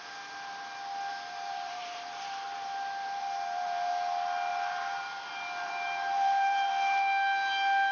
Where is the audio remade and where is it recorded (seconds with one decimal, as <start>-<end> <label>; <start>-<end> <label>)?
0.0-1.1 recorded; 1.1-3.9 remade; 3.9-4.5 recorded; 4.5-6.7 remade; 6.7-7.9 recorded